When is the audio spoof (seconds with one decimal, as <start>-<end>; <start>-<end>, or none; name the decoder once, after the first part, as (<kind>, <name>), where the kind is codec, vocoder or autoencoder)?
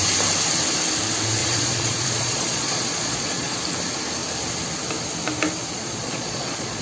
1.4-3.6 (vocoder, Vocos); 5.6-6.8